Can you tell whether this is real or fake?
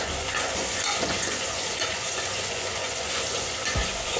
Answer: fake